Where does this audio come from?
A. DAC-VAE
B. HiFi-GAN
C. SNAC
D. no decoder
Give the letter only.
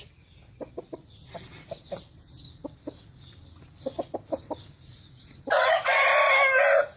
D